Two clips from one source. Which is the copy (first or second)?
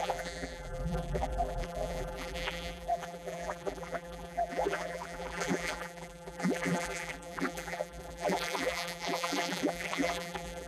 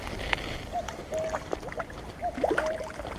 first